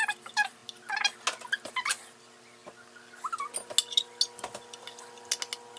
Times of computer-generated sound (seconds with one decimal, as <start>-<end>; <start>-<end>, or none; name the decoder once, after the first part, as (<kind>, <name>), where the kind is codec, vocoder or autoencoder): none